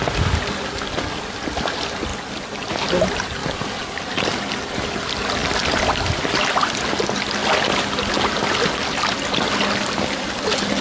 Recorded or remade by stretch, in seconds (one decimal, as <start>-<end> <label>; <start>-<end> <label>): 0.0-3.4 recorded; 3.4-4.7 remade; 4.7-5.4 recorded; 5.4-6.3 remade; 6.3-10.8 recorded